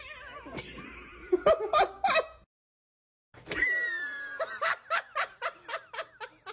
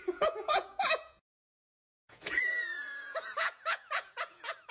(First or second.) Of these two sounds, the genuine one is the first